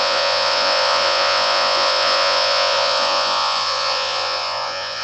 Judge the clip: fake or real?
fake